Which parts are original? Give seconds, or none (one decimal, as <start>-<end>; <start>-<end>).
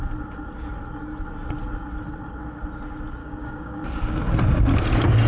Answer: 0.0-3.2; 3.8-5.3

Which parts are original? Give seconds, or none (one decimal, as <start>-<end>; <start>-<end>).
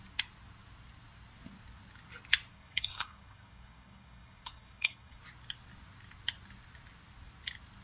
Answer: 0.0-2.5; 5.2-7.8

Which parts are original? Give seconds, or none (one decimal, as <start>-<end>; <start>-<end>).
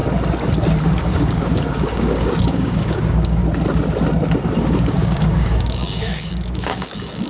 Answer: 0.0-0.9; 3.4-4.6